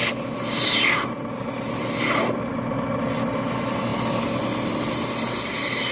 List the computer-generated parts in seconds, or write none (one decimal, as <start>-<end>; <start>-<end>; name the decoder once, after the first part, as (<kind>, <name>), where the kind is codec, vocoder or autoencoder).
none